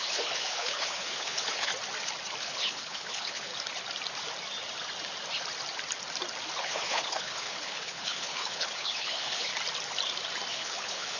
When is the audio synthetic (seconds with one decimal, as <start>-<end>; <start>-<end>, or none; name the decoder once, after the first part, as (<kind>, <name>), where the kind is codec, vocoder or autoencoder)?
0.0-1.7 (codec, HILCodec); 2.4-3.5; 6.6-9.5; 10.5-11.2